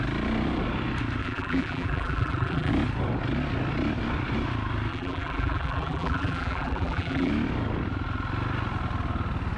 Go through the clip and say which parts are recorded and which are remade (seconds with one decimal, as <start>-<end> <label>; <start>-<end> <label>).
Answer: 0.0-1.2 recorded; 1.2-2.7 remade; 2.7-4.9 recorded; 4.9-7.3 remade; 7.3-9.6 recorded